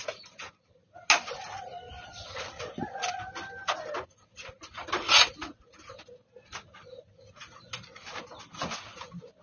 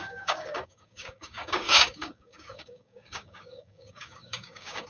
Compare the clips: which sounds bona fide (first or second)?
first